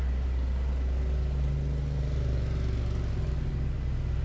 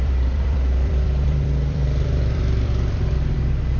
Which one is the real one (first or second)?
first